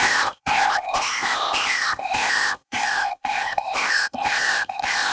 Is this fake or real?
fake